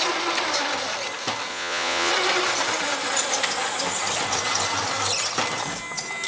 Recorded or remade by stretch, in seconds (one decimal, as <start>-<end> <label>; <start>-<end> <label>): 0.0-1.5 recorded; 1.5-2.1 remade; 2.1-6.3 recorded